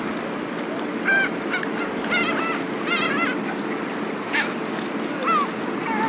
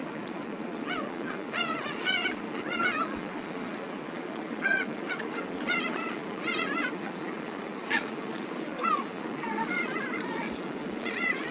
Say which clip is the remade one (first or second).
second